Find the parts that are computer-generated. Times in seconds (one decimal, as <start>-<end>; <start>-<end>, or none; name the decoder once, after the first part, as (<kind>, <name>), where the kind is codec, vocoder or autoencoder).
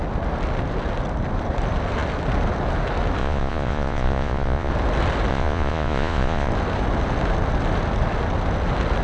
3.2-4.7 (vocoder, Vocos); 5.3-6.5